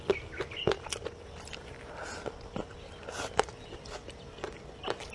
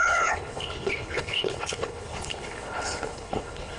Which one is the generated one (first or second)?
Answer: second